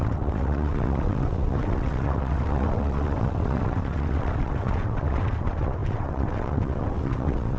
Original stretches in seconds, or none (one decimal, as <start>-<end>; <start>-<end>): none

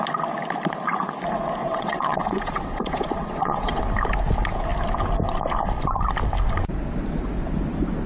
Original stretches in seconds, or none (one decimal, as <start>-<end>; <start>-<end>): 0.0-1.6; 3.8-8.1

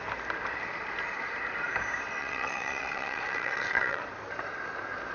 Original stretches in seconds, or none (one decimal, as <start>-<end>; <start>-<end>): 0.0-2.2; 4.0-5.1

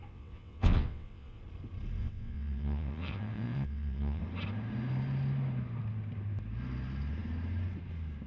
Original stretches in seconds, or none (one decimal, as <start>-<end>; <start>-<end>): 1.4-2.0; 4.2-8.3